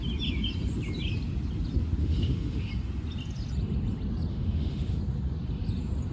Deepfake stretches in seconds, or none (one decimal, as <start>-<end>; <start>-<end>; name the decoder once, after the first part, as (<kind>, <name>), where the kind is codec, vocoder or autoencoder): 2.0-2.7 (autoencoder, DAC-VAE); 4.3-5.0